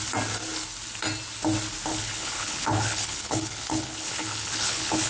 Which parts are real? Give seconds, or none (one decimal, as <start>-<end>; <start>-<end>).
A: 0.0-1.9